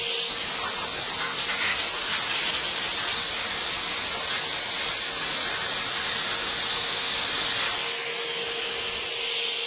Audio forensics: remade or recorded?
recorded